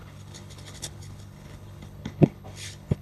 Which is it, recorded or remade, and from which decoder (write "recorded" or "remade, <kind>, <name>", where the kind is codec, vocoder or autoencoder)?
remade, codec, HILCodec